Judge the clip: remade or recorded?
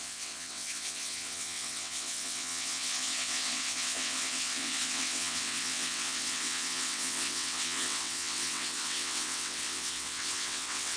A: remade